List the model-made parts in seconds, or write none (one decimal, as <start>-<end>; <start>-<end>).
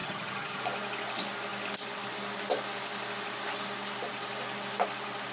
0.0-0.6